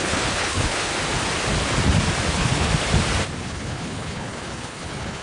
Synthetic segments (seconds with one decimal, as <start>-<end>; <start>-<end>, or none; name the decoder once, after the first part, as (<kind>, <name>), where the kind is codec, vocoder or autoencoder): 0.0-0.9 (codec, HILCodec); 2.3-2.7; 3.4-5.2